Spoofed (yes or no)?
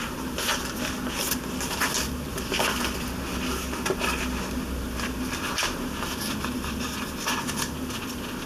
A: no